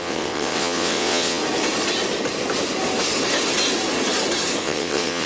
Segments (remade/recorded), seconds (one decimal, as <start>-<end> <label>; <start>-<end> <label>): 0.0-1.4 remade; 1.4-4.6 recorded; 4.6-5.3 remade